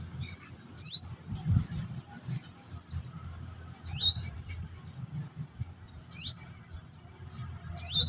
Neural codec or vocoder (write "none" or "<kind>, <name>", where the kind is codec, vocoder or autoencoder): none